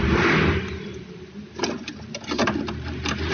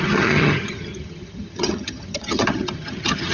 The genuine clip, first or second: first